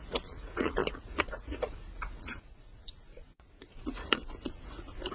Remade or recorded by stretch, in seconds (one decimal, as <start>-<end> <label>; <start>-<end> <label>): 0.0-5.1 remade